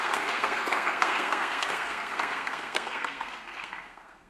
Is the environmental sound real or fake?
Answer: fake